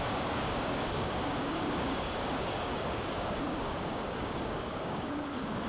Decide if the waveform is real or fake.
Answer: fake